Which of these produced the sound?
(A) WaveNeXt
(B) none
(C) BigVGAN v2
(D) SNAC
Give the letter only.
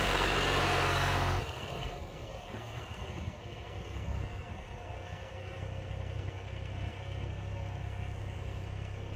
D